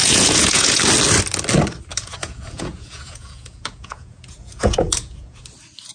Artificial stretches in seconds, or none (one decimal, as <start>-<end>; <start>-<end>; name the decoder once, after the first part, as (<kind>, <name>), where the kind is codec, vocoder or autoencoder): 0.0-0.8 (vocoder, Vocos); 1.9-5.4